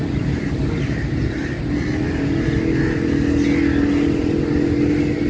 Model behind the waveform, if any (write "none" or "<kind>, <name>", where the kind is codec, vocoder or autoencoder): none